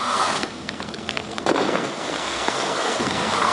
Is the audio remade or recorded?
remade